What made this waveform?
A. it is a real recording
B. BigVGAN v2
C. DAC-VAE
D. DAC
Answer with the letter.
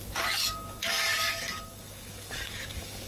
D